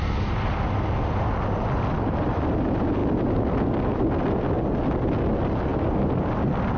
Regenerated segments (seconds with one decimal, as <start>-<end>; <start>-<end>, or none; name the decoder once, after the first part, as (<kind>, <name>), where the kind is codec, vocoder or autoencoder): none